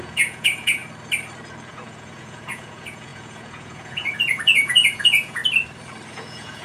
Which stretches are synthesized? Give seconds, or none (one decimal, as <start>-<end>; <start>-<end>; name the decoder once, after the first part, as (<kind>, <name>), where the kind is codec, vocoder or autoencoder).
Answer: 0.0-0.8 (vocoder, Vocos); 1.7-5.4; 6.1-6.6